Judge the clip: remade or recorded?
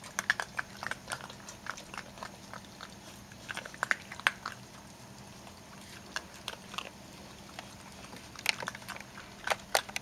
recorded